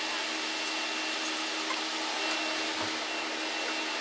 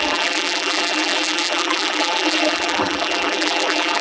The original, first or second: first